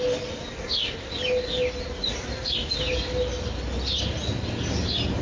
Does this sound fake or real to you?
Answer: real